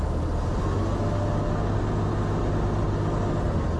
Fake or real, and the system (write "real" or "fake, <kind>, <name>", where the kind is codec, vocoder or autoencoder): real